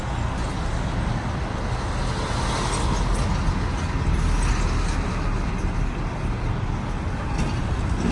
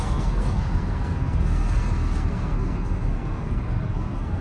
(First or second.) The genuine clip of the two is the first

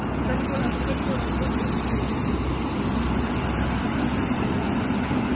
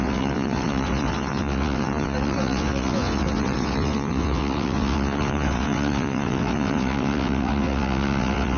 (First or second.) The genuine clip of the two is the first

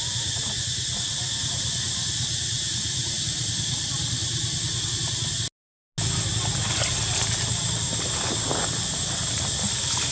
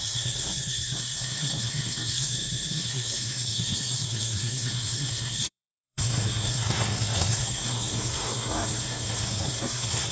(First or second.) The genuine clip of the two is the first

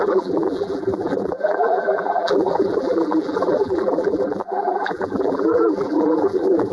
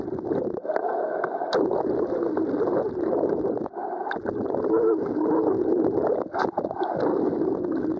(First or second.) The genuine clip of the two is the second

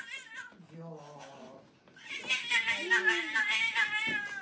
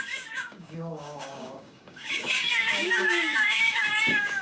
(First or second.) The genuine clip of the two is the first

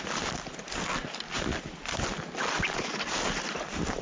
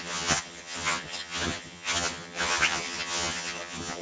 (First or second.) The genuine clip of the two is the first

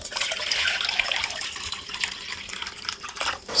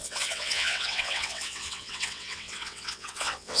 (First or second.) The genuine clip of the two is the first